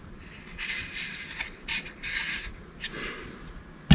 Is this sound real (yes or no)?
yes